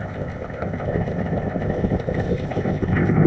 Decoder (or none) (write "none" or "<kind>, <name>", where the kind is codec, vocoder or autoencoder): codec, ZipCodec